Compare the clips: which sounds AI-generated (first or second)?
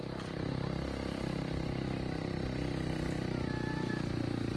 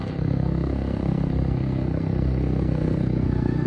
second